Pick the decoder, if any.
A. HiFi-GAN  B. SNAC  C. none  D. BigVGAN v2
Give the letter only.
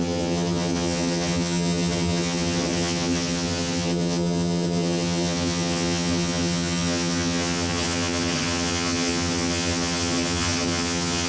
A